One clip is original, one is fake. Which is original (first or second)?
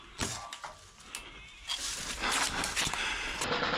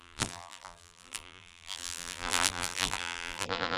first